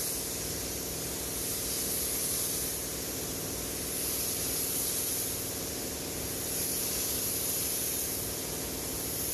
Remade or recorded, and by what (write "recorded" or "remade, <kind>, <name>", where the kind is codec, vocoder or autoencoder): recorded